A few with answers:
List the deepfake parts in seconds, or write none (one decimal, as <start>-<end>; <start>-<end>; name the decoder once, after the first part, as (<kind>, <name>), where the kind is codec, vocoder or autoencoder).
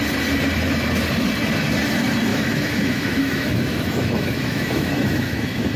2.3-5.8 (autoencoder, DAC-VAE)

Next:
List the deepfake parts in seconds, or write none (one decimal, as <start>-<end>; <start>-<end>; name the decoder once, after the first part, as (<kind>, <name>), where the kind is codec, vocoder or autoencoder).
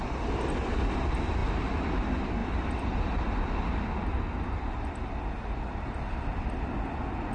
none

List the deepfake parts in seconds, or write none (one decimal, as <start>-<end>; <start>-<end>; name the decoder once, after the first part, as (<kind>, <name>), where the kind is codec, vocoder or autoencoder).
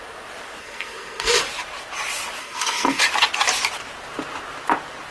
0.6-1.4 (codec, SNAC); 2.4-3.0